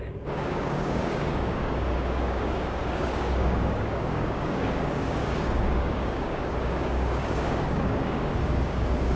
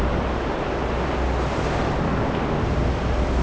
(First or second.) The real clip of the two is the second